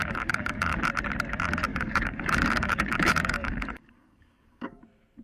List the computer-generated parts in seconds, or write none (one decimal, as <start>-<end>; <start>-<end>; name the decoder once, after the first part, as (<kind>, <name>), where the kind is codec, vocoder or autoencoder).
0.0-0.8 (codec, DAC); 1.7-4.8